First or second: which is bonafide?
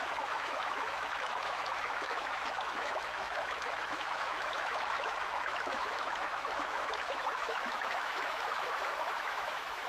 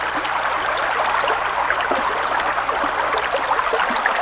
second